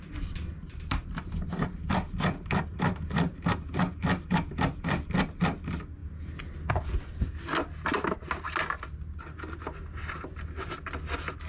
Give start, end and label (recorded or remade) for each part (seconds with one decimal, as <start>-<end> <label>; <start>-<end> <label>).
0.0-11.5 recorded